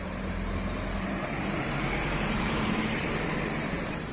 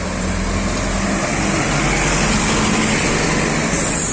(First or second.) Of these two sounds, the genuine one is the second